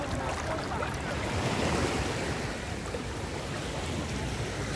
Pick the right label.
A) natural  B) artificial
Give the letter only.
A